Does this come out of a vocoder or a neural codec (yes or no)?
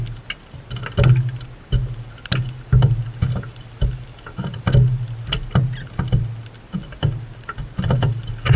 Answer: no